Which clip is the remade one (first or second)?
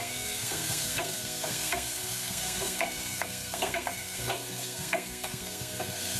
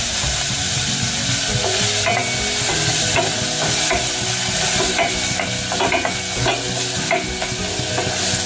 first